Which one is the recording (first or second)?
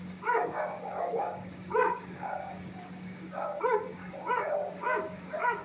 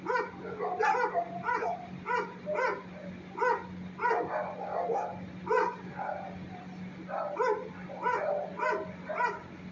second